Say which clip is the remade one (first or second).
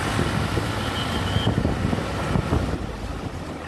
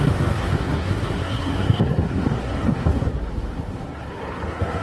second